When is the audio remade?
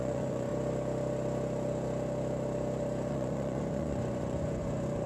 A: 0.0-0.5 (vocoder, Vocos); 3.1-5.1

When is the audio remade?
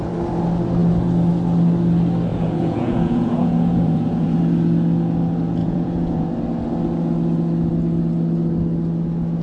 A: 2.3-4.4 (vocoder, Vocos); 5.6-6.3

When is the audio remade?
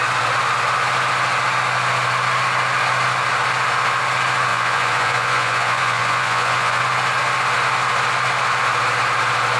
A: 4.5-6.8 (vocoder, Vocos)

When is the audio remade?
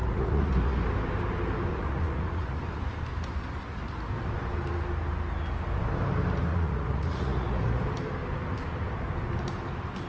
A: 0.0-0.8 (vocoder, Vocos); 1.7-2.6; 6.5-7.8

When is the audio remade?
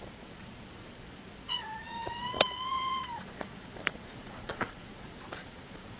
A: 0.0-6.0 (vocoder, Vocos)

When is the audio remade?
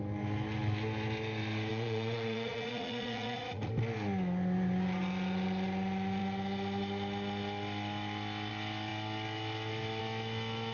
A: 1.7-3.7 (vocoder, Vocos)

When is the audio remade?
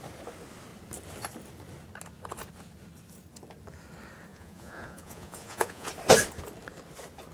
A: 4.3-5.9 (vocoder, Vocos)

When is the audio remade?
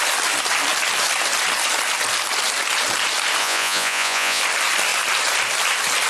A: 3.4-4.4 (vocoder, Vocos)